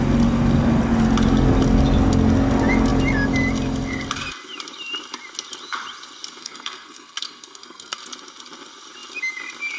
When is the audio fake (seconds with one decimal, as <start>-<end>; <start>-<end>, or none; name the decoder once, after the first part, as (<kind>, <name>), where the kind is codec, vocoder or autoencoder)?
6.4-8.0 (codec, SNAC)